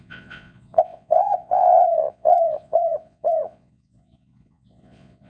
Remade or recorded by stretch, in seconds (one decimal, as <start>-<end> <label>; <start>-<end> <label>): 0.0-5.3 remade